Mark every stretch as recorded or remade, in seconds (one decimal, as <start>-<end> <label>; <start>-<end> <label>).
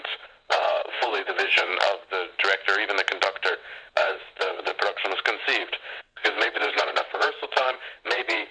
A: 0.0-1.7 remade; 1.7-3.5 recorded; 3.5-4.7 remade; 4.7-5.6 recorded; 5.6-8.5 remade